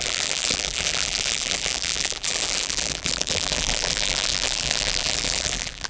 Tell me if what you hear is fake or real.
fake